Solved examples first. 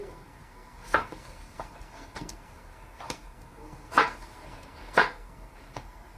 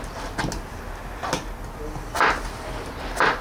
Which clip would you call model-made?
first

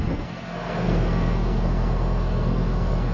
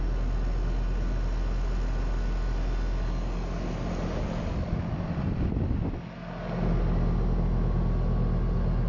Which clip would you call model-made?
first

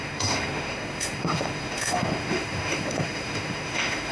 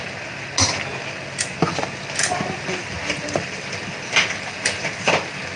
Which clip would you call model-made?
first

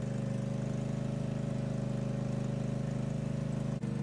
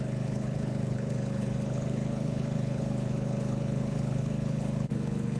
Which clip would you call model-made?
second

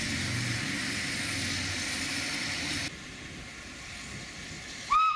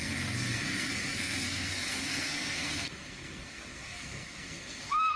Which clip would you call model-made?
second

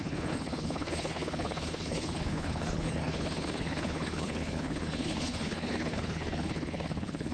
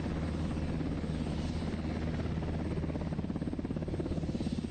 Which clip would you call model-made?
first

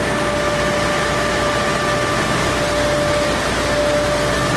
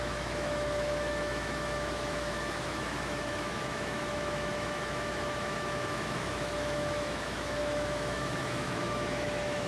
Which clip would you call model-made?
second